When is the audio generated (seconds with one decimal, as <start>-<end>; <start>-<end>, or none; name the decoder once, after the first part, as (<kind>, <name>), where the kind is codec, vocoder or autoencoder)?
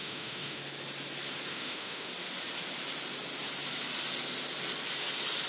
0.0-0.6 (autoencoder, DAC-VAE); 1.5-2.1